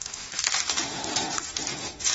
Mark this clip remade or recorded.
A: remade